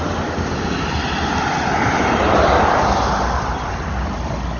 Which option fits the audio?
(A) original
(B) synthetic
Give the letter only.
A